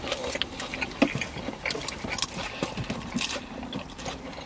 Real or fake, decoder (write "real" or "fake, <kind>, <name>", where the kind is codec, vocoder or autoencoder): real